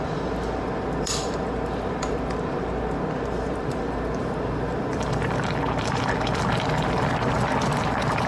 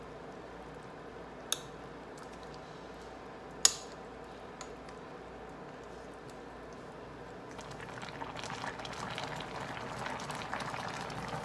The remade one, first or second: first